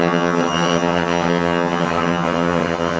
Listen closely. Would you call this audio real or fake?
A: fake